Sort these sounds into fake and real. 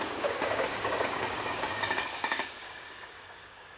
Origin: fake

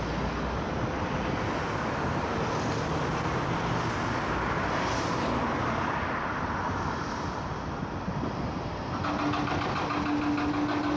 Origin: real